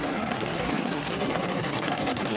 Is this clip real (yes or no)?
no